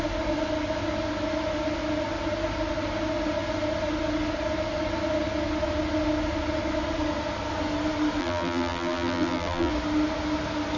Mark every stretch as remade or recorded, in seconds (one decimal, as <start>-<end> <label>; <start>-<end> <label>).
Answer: 0.0-8.2 recorded; 8.2-9.7 remade; 9.7-10.8 recorded